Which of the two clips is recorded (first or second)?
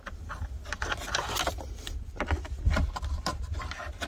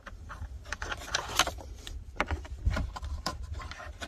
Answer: first